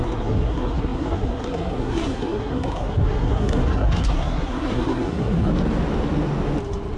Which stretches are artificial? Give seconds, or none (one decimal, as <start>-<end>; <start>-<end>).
0.0-5.5